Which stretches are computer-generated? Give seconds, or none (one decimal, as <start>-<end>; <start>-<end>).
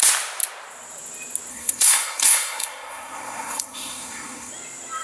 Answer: 1.5-4.5